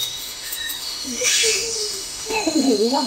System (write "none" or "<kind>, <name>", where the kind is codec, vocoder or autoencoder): autoencoder, DAC-VAE